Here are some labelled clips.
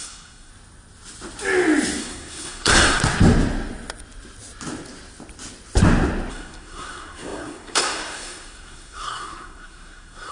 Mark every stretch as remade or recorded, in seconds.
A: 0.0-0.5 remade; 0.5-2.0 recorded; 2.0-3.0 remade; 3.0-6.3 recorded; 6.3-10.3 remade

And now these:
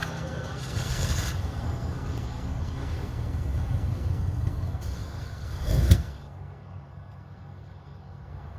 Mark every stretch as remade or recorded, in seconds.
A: 0.0-8.6 remade

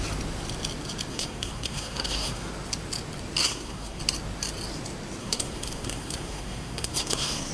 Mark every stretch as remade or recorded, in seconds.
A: 0.0-1.1 recorded; 1.1-2.5 remade; 2.5-3.4 recorded; 3.4-4.0 remade; 4.0-5.2 recorded; 5.2-7.5 remade